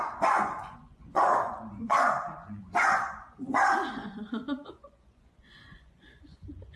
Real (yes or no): no